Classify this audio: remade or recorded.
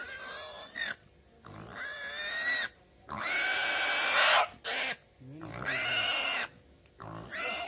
recorded